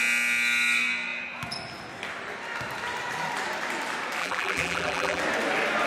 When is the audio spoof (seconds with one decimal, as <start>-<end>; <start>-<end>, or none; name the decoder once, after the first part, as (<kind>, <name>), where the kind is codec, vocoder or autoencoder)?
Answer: 4.2-5.2 (vocoder, BigVGAN v2)